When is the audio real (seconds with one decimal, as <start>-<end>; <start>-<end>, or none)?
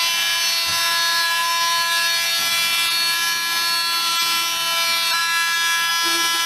0.0-6.5